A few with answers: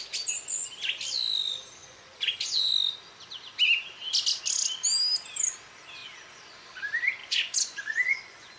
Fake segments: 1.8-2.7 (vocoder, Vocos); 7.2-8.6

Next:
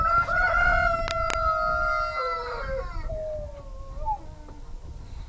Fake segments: none

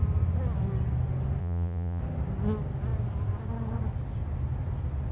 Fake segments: 1.4-2.0 (vocoder, Vocos)

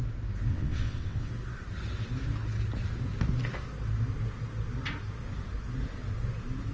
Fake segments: 0.5-1.3 (vocoder, WaveNeXt)

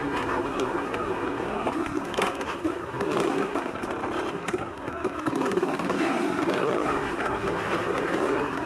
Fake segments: 0.0-3.8 (codec, SNAC); 4.3-8.7

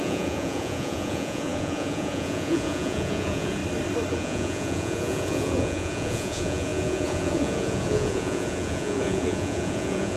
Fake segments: 0.0-3.6 (vocoder, Vocos); 4.1-10.2

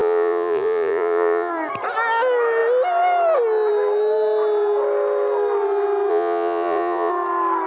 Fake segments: 0.0-1.5 (vocoder, Vocos); 6.1-7.1